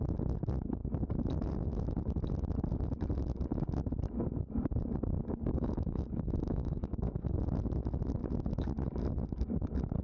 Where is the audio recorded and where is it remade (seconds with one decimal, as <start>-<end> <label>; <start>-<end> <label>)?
0.0-5.5 recorded; 5.5-7.4 remade; 7.4-10.0 recorded